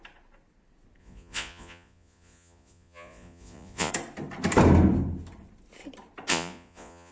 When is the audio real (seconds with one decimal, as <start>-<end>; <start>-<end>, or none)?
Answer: 0.0-1.0; 3.9-6.3